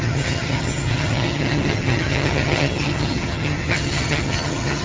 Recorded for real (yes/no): no